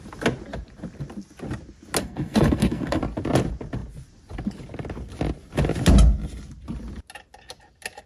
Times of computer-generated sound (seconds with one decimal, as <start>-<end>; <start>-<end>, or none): 2.0-3.0